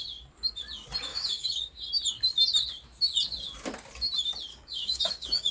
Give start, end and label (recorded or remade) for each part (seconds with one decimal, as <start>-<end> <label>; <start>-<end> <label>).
0.0-1.1 recorded; 1.1-1.9 remade; 1.9-4.5 recorded; 4.5-5.5 remade